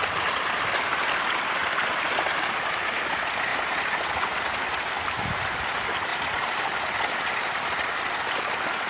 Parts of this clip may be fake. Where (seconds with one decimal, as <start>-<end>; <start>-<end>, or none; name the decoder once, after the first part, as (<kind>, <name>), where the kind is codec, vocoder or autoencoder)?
none